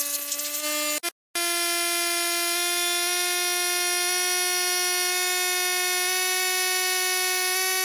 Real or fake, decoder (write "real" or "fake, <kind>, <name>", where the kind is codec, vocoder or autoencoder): real